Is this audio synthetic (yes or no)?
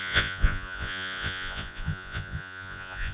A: yes